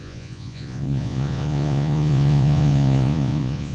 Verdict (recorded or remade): remade